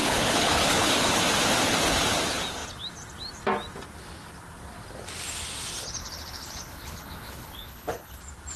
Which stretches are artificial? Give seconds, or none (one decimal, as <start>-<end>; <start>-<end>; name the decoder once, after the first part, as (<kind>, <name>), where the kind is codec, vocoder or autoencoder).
0.0-1.2 (codec, HILCodec); 6.0-8.2